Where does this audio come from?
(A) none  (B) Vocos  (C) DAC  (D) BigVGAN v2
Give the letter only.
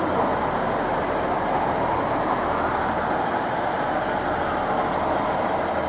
A